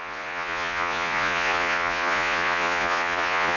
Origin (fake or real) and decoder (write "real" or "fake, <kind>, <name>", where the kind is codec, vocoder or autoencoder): fake, vocoder, Vocos